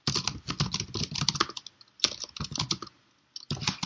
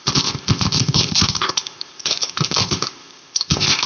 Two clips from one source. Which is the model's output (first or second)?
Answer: second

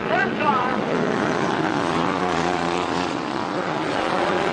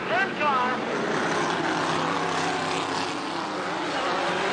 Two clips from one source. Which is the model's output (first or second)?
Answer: first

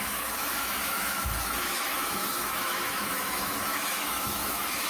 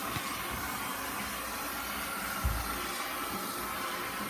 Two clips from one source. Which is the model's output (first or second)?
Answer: first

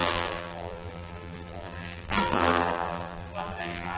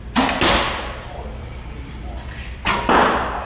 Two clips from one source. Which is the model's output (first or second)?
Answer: first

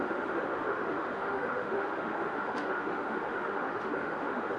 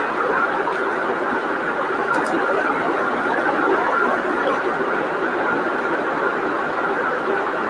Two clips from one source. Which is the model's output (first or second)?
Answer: first